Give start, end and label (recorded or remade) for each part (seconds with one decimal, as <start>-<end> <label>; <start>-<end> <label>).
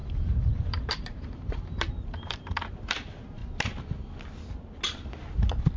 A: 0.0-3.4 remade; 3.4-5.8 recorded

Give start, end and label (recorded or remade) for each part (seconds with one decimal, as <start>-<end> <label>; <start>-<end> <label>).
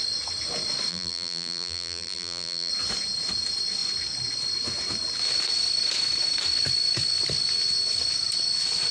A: 0.0-0.9 recorded; 0.9-2.7 remade; 2.7-8.9 recorded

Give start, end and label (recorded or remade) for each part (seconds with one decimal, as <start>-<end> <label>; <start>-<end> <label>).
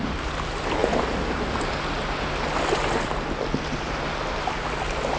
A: 0.0-5.2 recorded